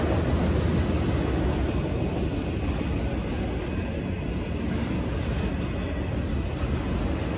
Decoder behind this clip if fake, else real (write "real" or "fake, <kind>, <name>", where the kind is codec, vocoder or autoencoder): real